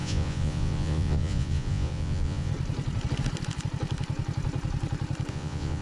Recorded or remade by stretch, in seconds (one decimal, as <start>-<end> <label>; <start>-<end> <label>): 0.0-2.5 remade; 2.5-5.3 recorded; 5.3-5.8 remade